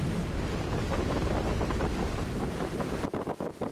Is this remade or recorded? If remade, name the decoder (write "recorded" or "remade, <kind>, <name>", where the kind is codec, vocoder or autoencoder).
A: remade, vocoder, BigVGAN v2